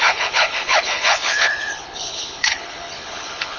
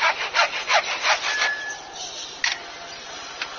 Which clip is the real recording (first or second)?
second